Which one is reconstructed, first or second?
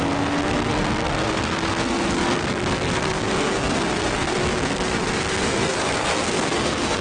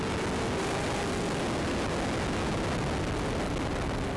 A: first